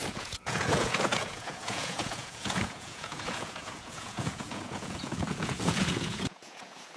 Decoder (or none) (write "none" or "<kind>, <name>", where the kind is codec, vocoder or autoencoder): vocoder, Vocos